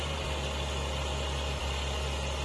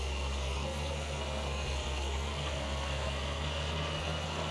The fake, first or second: second